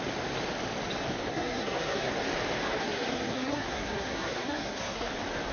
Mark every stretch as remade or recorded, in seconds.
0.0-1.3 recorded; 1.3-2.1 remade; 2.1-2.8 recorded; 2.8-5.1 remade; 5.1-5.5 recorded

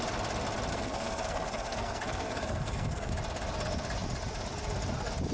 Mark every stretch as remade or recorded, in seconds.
0.0-0.7 recorded; 0.7-3.1 remade; 3.1-5.3 recorded

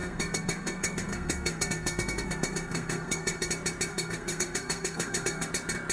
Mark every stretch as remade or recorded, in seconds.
0.0-3.5 remade; 3.5-3.9 recorded; 3.9-5.5 remade; 5.5-5.9 recorded